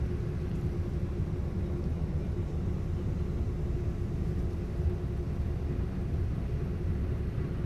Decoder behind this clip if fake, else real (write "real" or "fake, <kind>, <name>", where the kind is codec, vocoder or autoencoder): real